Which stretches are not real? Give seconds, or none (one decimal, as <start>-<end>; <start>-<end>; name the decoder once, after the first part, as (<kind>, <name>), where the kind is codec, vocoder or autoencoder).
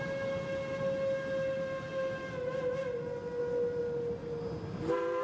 none